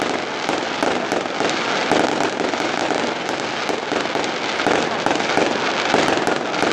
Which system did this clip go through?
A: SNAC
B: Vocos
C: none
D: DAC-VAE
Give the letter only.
C